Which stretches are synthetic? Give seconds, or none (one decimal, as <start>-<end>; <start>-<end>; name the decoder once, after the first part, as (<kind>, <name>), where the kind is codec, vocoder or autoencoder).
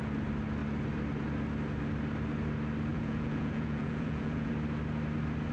2.9-4.5 (vocoder, Vocos)